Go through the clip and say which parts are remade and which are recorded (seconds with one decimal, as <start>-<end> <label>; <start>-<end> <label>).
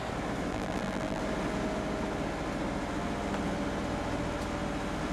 0.0-0.5 recorded; 0.5-1.2 remade; 1.2-5.1 recorded